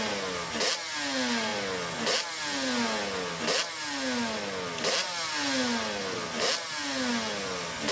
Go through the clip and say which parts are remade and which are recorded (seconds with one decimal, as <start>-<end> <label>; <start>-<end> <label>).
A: 0.0-7.9 recorded